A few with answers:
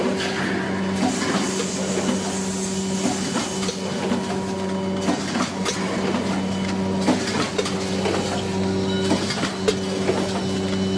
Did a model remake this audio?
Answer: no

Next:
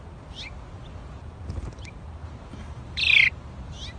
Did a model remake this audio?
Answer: no